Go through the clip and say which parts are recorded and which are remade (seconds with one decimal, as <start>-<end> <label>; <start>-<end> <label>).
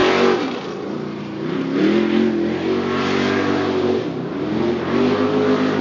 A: 0.0-5.8 recorded